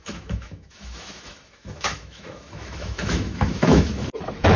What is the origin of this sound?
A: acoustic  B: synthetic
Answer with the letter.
B